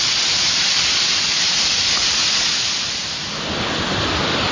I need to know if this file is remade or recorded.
recorded